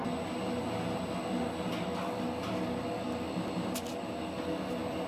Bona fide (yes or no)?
yes